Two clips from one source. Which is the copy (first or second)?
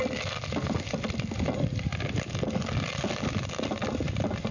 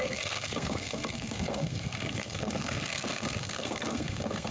second